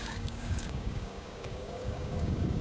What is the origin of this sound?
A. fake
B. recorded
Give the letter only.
A